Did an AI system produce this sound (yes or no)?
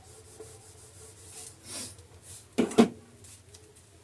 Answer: no